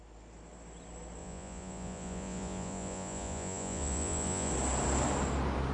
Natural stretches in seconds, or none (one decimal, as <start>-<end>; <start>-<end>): 0.0-1.2; 4.5-5.7